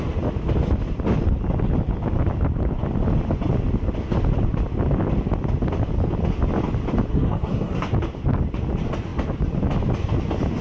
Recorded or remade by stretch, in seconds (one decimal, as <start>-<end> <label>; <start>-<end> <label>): 0.0-7.1 recorded; 7.1-7.9 remade; 7.9-10.6 recorded